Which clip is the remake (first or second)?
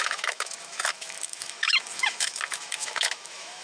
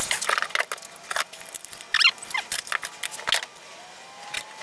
first